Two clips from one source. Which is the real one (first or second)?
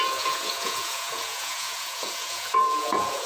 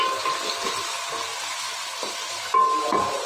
second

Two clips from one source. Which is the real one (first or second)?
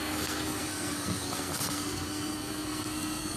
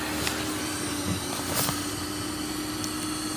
second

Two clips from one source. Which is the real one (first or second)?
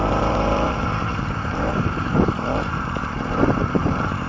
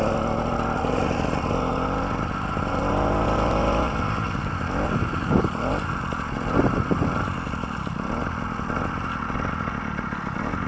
second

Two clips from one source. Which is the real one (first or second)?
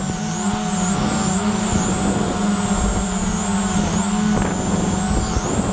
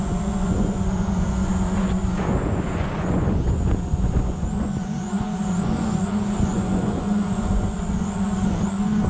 first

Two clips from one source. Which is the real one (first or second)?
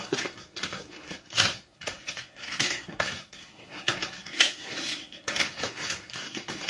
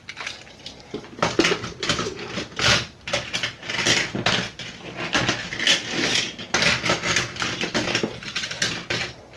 second